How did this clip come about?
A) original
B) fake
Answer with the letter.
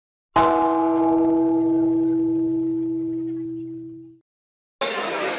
A